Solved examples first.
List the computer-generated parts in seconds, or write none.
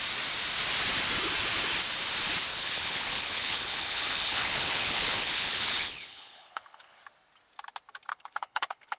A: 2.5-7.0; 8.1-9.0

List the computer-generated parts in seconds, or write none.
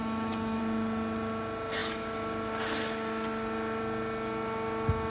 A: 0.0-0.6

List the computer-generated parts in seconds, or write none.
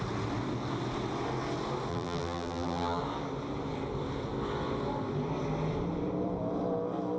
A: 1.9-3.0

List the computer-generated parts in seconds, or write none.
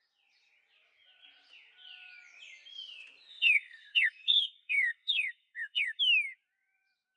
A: 3.3-6.0